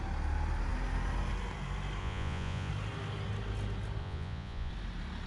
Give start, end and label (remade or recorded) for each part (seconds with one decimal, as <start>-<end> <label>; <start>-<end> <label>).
0.0-2.0 recorded; 2.0-2.7 remade; 2.7-4.0 recorded; 4.0-4.7 remade; 4.7-5.3 recorded

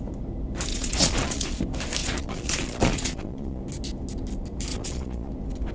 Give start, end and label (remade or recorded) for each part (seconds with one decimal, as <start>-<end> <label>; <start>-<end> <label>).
0.0-0.7 recorded; 0.7-1.6 remade; 1.6-2.0 recorded; 2.0-3.6 remade; 3.6-4.7 recorded; 4.7-5.3 remade; 5.3-5.7 recorded

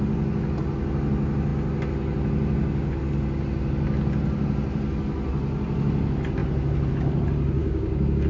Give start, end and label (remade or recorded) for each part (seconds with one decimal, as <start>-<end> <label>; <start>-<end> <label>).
0.0-7.6 recorded; 7.6-8.3 remade

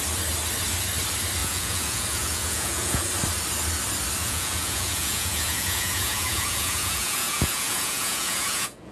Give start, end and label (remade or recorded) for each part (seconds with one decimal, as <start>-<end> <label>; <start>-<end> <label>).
0.0-1.4 recorded; 1.4-3.0 remade; 3.0-4.2 recorded; 4.2-8.9 remade

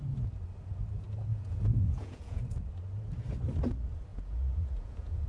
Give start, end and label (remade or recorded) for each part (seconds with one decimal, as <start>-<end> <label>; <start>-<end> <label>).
0.0-1.3 recorded; 1.3-2.4 remade; 2.4-4.1 recorded; 4.1-5.3 remade

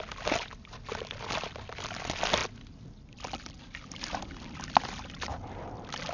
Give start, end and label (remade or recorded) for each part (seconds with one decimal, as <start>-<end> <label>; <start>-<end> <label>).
0.0-6.1 recorded

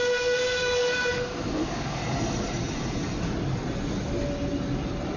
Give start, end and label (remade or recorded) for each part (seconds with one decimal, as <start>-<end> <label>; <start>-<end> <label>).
0.0-2.0 remade; 2.0-5.2 recorded

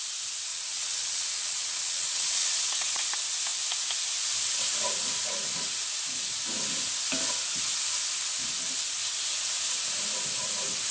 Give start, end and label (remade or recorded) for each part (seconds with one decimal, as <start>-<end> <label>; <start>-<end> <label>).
0.0-0.5 recorded; 0.5-3.0 remade; 3.0-10.9 recorded